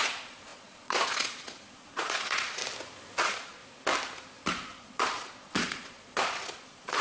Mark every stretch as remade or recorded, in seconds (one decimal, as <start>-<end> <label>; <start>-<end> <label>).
0.0-2.6 remade; 2.6-3.2 recorded; 3.2-3.6 remade; 3.6-4.5 recorded; 4.5-7.0 remade